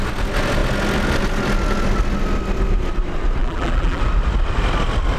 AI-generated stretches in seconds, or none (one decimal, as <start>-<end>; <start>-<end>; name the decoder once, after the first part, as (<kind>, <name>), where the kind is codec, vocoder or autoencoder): 3.4-4.0 (vocoder, BigVGAN v2)